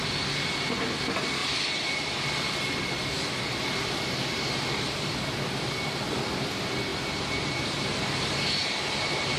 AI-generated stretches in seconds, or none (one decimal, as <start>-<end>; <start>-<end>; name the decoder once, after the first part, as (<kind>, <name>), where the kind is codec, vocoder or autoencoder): 1.4-3.1 (vocoder, BigVGAN v2); 6.9-8.0; 8.6-9.4